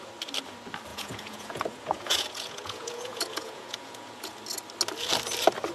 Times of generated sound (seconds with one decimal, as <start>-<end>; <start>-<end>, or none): 0.9-4.3

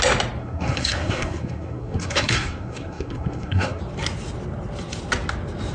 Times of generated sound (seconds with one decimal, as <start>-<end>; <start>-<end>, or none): 0.4-3.8

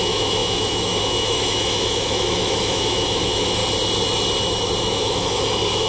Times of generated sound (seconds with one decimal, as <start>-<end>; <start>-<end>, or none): 0.0-3.6; 4.8-5.9

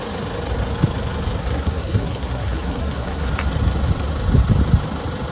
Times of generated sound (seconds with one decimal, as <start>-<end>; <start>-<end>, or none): 1.4-3.3

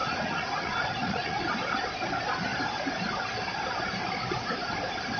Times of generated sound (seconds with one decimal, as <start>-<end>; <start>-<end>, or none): 0.0-1.4

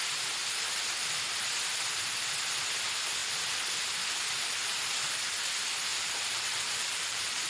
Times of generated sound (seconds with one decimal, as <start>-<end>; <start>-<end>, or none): 5.9-7.5

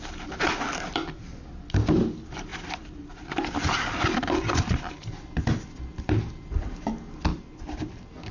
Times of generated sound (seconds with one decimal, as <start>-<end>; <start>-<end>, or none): 2.5-4.6; 7.3-8.3

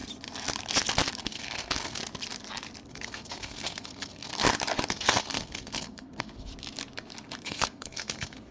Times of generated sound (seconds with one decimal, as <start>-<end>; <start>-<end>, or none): 1.2-2.0; 2.9-4.3; 4.9-6.5; 7.4-8.5